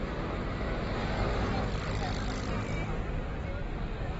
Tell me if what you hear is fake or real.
real